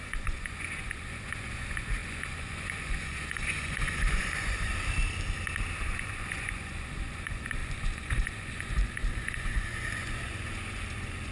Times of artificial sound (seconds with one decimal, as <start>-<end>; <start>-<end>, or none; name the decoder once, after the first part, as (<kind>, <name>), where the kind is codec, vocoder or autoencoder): 0.0-4.7 (vocoder, Vocos); 5.8-11.3